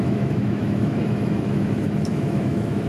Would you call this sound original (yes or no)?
no